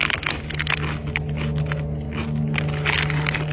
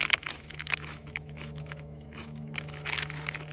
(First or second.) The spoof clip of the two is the second